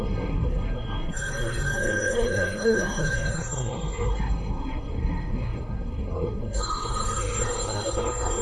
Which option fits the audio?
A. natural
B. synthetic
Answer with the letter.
B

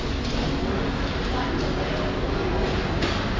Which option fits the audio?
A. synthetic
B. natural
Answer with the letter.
B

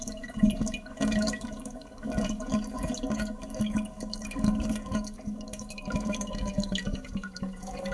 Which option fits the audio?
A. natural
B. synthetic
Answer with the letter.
B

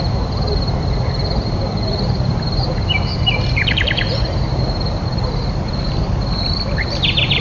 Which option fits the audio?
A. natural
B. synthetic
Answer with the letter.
B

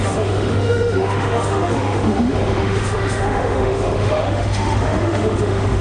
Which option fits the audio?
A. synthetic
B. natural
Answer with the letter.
A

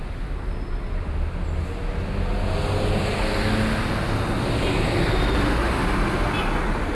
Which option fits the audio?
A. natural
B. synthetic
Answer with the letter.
A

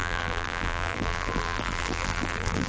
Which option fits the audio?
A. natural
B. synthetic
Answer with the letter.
B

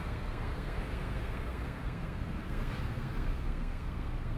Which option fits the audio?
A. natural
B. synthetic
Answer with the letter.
B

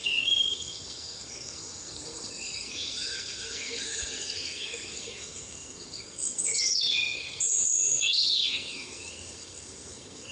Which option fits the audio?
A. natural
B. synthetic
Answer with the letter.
B